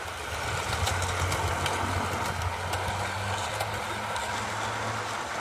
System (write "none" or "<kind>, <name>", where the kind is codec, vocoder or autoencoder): none